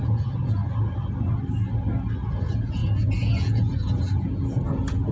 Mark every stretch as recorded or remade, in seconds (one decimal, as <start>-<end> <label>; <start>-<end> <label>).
0.0-0.6 remade; 0.6-2.3 recorded; 2.3-5.1 remade